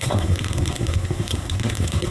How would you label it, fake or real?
fake